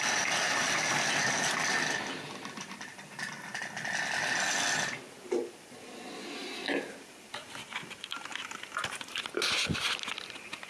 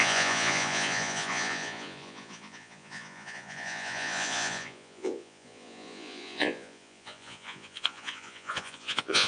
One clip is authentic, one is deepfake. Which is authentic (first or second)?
first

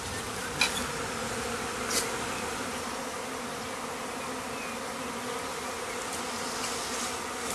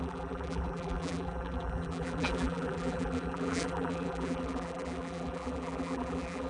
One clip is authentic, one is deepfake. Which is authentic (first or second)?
first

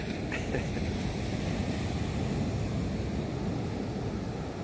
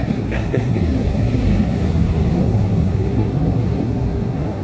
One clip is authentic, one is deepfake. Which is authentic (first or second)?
first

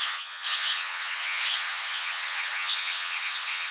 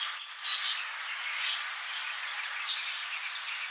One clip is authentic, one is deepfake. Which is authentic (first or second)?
second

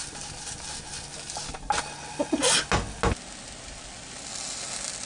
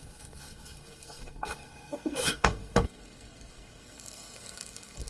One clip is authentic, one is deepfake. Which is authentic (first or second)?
first